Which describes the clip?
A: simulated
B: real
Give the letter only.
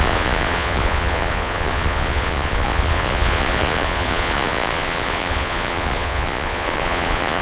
A